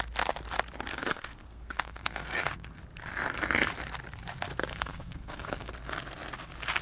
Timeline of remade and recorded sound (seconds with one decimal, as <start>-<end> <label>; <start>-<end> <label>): 0.0-1.0 recorded; 1.0-2.8 remade; 2.8-4.7 recorded; 4.7-5.7 remade; 5.7-6.8 recorded